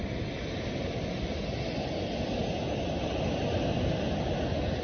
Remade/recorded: recorded